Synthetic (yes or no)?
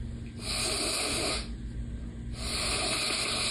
no